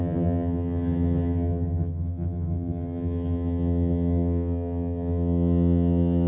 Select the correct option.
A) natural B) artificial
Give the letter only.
B